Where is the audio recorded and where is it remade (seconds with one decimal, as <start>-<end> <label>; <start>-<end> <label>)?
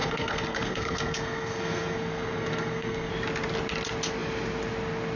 0.0-3.1 remade; 3.1-5.2 recorded